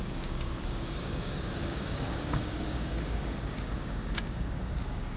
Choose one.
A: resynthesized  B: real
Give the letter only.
A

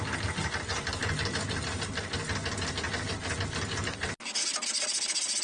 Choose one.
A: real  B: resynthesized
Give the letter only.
A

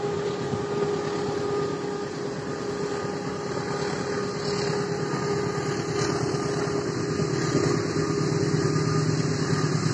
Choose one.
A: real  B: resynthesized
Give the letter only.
A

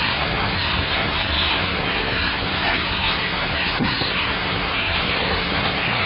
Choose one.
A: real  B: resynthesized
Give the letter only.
B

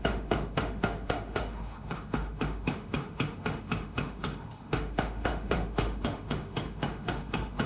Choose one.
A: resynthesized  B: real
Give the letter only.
A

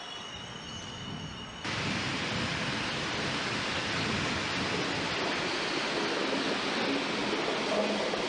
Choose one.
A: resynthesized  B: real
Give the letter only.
B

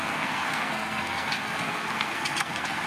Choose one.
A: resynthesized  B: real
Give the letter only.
A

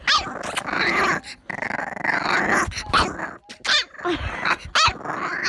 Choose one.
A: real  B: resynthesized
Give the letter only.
A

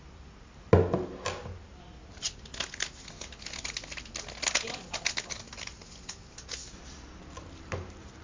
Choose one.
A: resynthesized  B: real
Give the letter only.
B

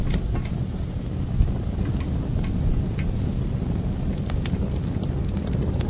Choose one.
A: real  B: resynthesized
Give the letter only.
A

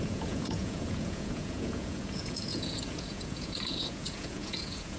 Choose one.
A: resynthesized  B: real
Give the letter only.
A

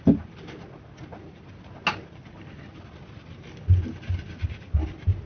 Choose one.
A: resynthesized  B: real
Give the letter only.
B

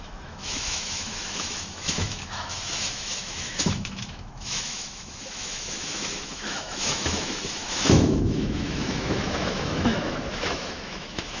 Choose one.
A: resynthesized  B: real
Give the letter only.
A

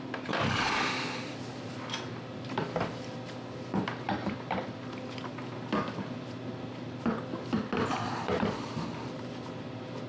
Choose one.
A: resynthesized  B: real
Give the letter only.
B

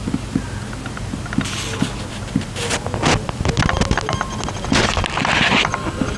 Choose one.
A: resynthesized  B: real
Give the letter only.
B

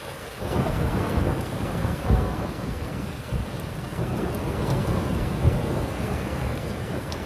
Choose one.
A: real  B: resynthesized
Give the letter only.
B